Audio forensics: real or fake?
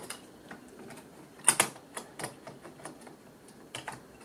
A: real